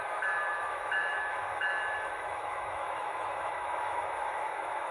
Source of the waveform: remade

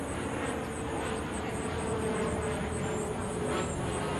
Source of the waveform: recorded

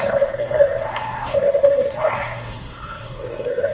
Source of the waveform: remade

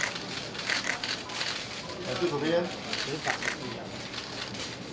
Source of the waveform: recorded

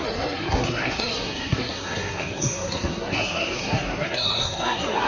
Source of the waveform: remade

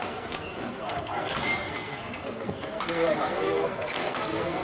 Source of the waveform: remade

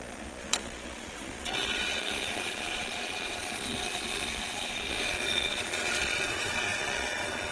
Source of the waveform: remade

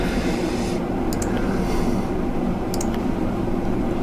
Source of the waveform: recorded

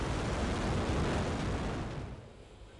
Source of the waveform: recorded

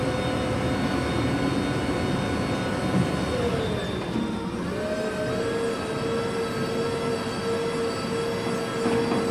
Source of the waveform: recorded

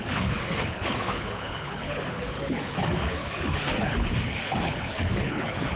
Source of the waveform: remade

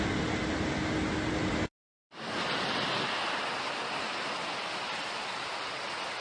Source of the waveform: recorded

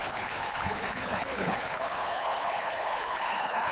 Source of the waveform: remade